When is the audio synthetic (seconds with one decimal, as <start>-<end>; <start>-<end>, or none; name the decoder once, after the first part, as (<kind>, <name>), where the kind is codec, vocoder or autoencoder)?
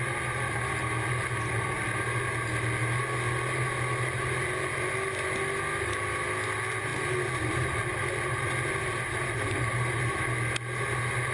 none